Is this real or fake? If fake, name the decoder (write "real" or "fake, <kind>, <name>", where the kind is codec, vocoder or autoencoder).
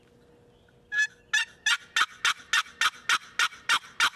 real